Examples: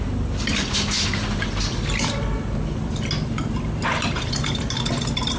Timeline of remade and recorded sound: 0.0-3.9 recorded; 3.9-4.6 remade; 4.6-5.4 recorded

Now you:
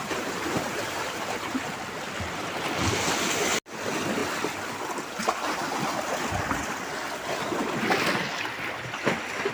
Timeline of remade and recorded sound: 0.0-1.5 remade; 1.5-9.5 recorded

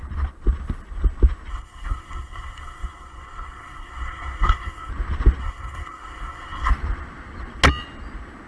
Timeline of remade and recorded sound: 0.0-1.5 recorded; 1.5-4.9 remade; 4.9-5.4 recorded; 5.4-6.7 remade; 6.7-8.5 recorded

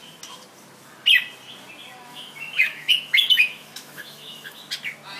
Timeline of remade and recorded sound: 0.0-2.1 recorded; 2.1-4.6 remade; 4.6-5.2 recorded

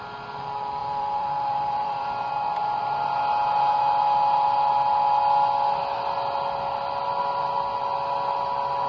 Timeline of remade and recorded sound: 0.0-0.8 recorded; 0.8-2.0 remade; 2.0-8.9 recorded

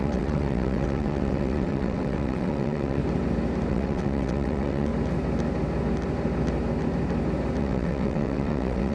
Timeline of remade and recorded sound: 0.0-3.0 remade; 3.0-3.7 recorded; 3.7-4.9 remade; 4.9-7.6 recorded; 7.6-8.9 remade

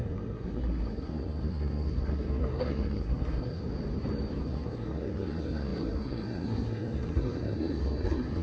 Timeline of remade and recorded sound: 0.0-3.6 remade; 3.6-4.4 recorded; 4.4-8.4 remade